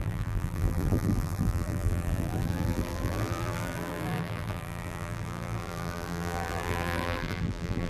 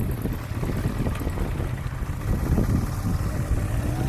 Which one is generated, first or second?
first